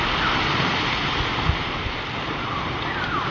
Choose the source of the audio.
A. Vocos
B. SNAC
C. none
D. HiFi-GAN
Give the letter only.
C